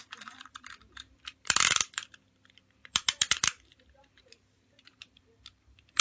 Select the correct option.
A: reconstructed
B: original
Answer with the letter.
A